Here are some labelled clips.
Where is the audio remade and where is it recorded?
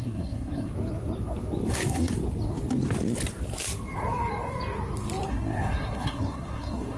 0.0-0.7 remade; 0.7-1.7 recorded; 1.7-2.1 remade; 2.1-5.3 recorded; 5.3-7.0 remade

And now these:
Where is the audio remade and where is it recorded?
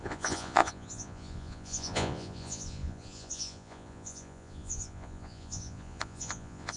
0.0-6.8 remade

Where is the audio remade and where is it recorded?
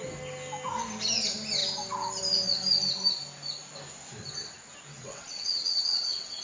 0.0-4.9 recorded; 4.9-6.4 remade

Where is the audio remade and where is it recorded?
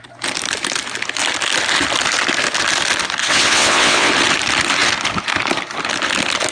0.0-3.2 recorded; 3.2-4.1 remade; 4.1-6.5 recorded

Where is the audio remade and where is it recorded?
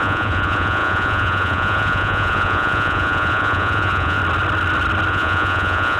0.0-4.2 remade; 4.2-5.1 recorded; 5.1-6.0 remade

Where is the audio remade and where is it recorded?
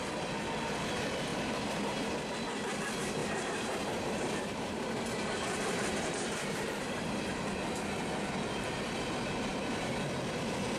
0.0-1.3 recorded; 1.3-2.1 remade; 2.1-3.2 recorded; 3.2-7.2 remade; 7.2-9.5 recorded; 9.5-10.2 remade; 10.2-10.8 recorded